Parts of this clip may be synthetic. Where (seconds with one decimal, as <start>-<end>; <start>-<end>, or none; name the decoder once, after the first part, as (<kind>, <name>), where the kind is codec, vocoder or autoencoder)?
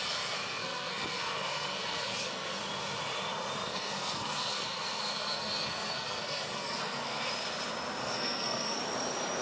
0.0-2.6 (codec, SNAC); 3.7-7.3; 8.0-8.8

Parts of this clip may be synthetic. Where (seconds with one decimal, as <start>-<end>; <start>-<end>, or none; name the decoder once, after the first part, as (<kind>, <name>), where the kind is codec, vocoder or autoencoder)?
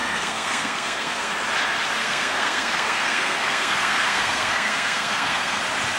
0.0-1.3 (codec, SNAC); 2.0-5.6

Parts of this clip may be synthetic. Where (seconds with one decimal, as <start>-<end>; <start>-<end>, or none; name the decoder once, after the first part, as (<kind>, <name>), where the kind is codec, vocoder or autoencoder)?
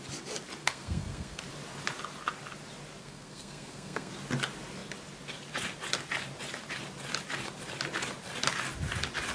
0.6-1.4 (codec, SNAC); 3.0-4.1